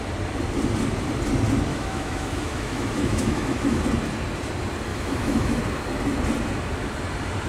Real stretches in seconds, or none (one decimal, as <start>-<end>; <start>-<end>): 0.0-1.7; 3.8-4.9; 5.6-7.5